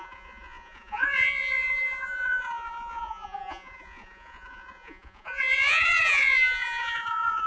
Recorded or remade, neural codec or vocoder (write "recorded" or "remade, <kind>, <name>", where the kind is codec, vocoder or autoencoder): remade, vocoder, Vocos